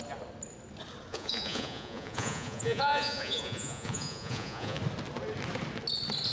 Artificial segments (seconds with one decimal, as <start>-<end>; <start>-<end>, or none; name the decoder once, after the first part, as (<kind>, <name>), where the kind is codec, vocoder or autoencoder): 1.1-4.8 (vocoder, Vocos)